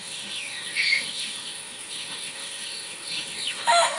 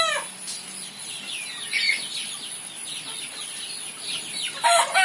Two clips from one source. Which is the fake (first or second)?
first